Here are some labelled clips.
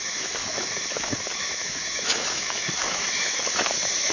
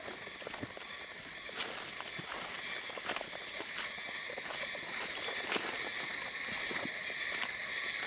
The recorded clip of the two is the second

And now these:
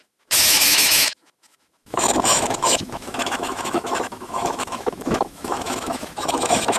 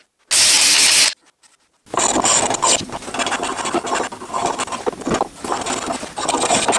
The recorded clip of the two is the second